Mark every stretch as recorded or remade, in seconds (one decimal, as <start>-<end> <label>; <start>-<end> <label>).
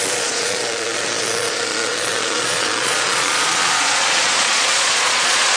0.0-5.6 remade